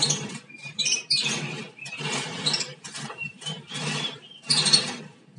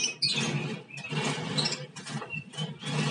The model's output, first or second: first